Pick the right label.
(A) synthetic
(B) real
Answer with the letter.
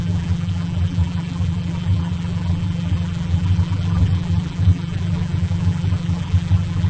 A